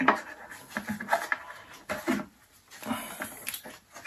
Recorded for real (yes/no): yes